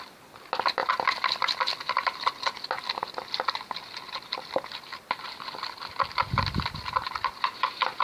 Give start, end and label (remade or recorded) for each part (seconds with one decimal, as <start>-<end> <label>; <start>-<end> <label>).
0.0-6.2 recorded; 6.2-8.0 remade